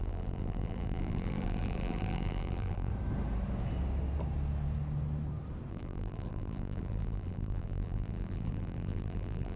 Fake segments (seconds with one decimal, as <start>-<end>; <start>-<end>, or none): 0.0-2.9; 5.7-9.6